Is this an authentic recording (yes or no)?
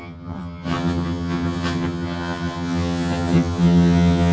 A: no